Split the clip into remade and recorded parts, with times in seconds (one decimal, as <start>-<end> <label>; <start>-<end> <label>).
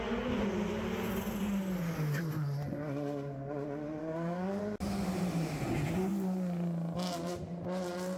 0.0-4.0 recorded; 4.0-4.6 remade; 4.6-8.2 recorded